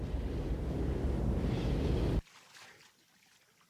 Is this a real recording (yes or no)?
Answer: yes